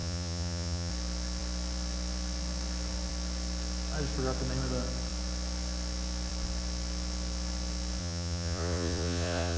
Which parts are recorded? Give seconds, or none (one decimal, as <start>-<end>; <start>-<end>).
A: 0.9-8.0